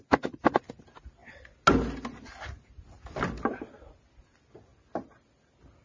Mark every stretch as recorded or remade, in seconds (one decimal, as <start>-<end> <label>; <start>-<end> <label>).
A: 0.0-5.8 recorded